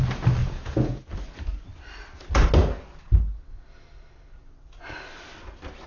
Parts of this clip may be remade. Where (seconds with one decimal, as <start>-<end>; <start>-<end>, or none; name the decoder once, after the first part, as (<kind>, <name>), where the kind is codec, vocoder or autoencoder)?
0.4-1.1 (vocoder, Vocos)